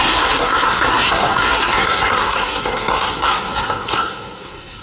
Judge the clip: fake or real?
fake